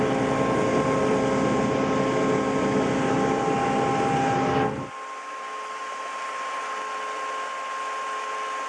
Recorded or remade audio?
recorded